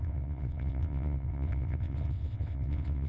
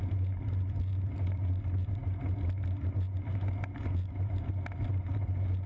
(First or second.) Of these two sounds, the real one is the second